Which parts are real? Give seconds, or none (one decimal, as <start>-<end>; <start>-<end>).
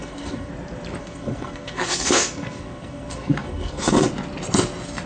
0.5-1.0; 4.1-5.1